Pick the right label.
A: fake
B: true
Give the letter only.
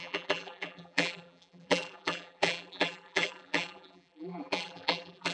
A